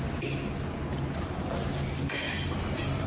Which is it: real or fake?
real